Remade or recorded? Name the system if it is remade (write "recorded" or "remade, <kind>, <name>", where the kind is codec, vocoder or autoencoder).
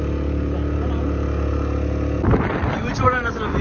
recorded